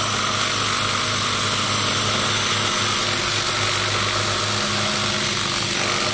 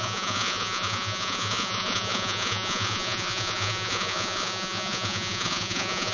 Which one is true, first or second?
first